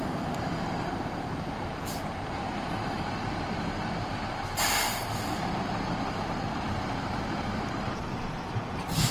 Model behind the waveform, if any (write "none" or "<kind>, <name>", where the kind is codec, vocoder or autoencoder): vocoder, BigVGAN v2